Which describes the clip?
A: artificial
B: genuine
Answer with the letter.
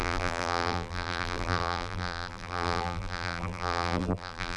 A